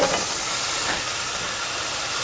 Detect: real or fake real